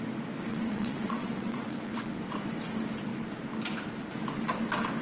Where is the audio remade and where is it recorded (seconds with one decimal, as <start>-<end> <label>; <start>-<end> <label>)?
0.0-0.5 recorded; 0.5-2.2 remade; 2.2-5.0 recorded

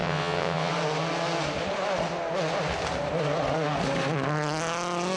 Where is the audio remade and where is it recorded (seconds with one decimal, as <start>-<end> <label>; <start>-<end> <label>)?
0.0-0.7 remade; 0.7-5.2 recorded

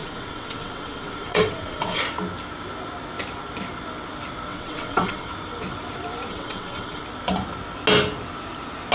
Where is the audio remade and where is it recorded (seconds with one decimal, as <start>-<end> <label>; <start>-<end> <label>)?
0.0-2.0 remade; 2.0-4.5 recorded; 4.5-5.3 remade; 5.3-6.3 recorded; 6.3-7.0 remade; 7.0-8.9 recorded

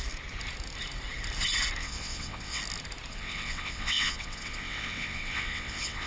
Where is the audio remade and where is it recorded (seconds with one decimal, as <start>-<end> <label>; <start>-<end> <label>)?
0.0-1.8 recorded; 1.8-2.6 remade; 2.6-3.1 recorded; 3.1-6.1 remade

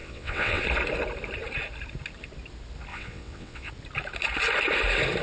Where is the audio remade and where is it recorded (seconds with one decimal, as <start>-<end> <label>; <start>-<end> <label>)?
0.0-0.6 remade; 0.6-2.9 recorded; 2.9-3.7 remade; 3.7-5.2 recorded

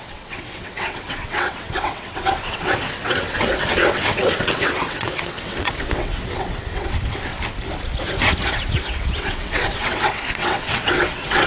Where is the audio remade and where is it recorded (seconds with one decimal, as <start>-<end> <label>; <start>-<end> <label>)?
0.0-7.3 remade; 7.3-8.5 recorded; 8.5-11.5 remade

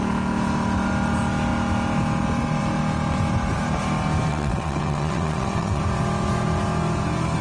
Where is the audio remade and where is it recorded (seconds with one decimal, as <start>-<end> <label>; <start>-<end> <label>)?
0.0-4.3 recorded; 4.3-5.8 remade; 5.8-7.4 recorded

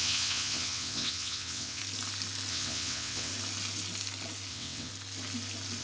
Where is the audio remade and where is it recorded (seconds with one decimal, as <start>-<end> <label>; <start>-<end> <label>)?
0.0-1.8 remade; 1.8-2.5 recorded; 2.5-3.3 remade; 3.3-4.5 recorded; 4.5-4.9 remade; 4.9-5.8 recorded